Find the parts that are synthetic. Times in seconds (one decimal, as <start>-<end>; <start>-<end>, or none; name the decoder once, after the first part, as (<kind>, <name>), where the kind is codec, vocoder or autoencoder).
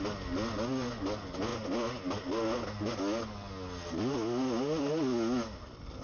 none